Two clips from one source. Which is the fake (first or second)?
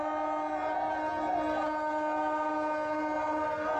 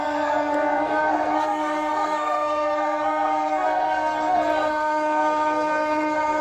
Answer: second